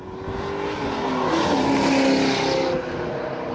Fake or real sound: real